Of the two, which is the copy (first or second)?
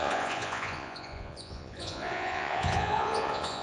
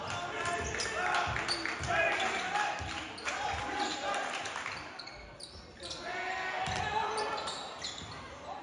first